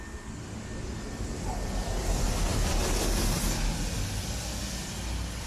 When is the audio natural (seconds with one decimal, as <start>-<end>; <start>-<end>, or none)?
0.0-5.5